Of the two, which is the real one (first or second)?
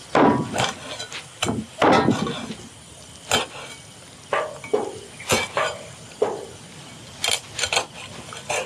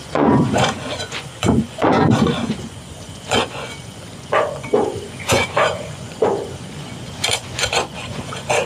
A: first